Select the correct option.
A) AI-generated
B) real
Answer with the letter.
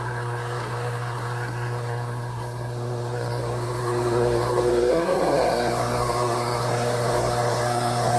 A